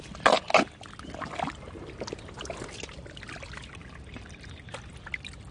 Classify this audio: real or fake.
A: real